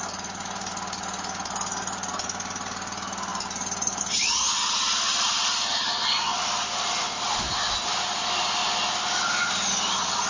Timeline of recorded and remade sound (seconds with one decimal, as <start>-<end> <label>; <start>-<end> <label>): 0.0-10.3 recorded